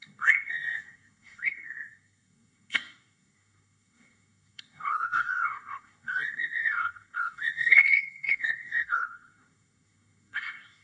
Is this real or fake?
fake